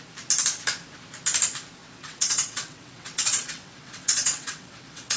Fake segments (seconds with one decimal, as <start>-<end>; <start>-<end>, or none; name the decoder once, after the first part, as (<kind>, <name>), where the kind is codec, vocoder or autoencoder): 1.8-5.2 (vocoder, WaveNeXt)